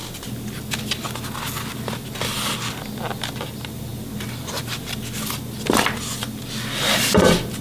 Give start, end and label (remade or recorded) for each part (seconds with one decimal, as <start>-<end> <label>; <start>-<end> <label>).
0.0-7.6 recorded